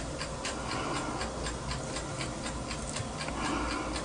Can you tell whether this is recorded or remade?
recorded